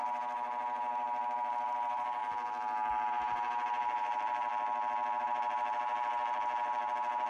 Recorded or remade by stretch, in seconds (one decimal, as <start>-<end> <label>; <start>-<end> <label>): 0.0-2.2 remade; 2.2-3.1 recorded; 3.1-4.5 remade; 4.5-5.2 recorded; 5.2-7.3 remade